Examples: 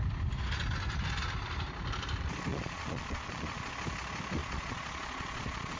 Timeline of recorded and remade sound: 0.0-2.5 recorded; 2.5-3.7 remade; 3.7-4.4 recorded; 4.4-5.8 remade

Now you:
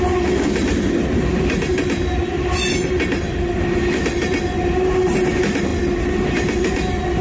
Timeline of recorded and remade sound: 0.0-7.2 recorded

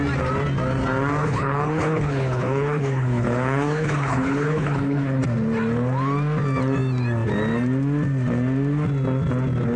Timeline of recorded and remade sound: 0.0-1.2 recorded; 1.2-5.2 remade; 5.2-9.8 recorded